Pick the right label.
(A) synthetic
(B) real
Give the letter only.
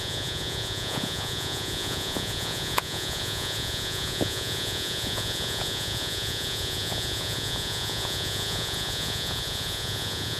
A